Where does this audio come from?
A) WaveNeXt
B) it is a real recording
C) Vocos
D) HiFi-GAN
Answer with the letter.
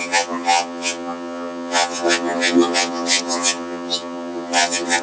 D